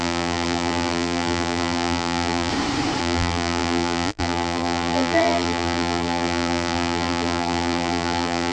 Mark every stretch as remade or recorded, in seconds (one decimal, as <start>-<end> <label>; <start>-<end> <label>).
0.0-2.5 remade; 2.5-3.0 recorded; 3.0-8.5 remade

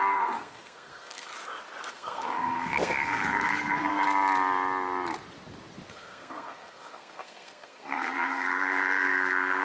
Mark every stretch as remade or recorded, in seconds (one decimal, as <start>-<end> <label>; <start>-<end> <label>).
0.0-1.3 remade; 1.3-1.9 recorded; 1.9-3.9 remade; 3.9-5.9 recorded; 5.9-9.6 remade

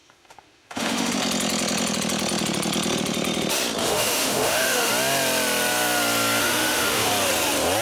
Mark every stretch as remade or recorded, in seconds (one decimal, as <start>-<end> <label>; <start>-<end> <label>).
0.0-1.1 remade; 1.1-3.8 recorded; 3.8-4.9 remade; 4.9-6.4 recorded; 6.4-7.1 remade; 7.1-7.8 recorded

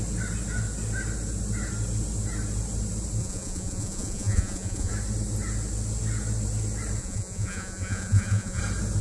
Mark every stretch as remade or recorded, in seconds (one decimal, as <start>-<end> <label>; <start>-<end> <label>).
0.0-3.2 recorded; 3.2-4.9 remade; 4.9-7.0 recorded; 7.0-8.6 remade; 8.6-9.0 recorded

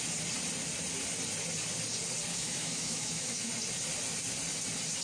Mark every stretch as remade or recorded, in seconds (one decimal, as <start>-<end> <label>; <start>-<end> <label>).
0.0-2.3 recorded; 2.3-3.5 remade; 3.5-5.0 recorded

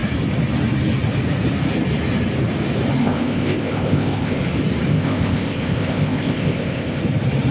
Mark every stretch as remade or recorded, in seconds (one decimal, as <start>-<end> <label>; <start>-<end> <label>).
0.0-3.0 recorded; 3.0-4.4 remade; 4.4-4.9 recorded; 4.9-7.0 remade; 7.0-7.5 recorded

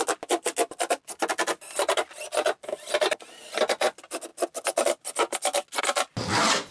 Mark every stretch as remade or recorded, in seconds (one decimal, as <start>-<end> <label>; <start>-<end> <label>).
0.0-6.7 recorded

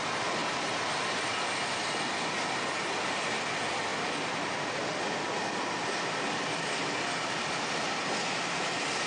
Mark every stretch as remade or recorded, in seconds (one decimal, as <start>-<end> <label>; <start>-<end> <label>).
0.0-9.1 recorded